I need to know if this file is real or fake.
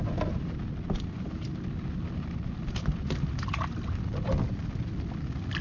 real